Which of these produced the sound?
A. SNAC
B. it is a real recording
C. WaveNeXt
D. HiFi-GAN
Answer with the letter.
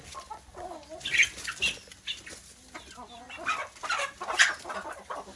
B